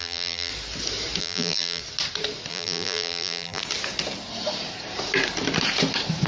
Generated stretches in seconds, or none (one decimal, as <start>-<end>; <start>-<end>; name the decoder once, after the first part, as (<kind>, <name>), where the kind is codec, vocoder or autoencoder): 0.0-0.5 (vocoder, BigVGAN v2); 1.2-1.8; 2.5-3.6